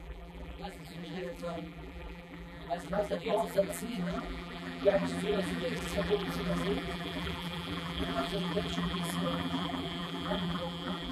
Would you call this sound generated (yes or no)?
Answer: yes